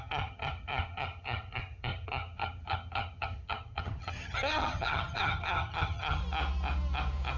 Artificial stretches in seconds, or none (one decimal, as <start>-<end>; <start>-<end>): 0.0-6.2